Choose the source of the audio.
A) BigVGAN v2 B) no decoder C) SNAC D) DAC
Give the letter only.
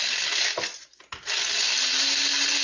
B